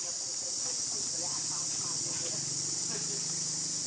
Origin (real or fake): real